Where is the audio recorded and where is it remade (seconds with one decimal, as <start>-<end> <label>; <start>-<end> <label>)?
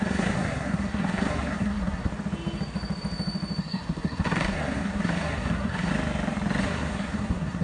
0.0-2.1 remade; 2.1-3.6 recorded; 3.6-5.9 remade; 5.9-6.6 recorded; 6.6-7.6 remade